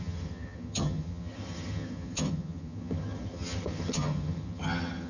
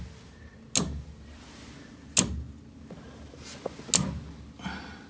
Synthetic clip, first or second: first